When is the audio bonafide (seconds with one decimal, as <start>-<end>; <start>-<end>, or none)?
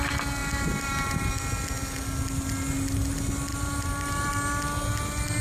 0.0-0.4; 1.3-3.5; 4.3-5.4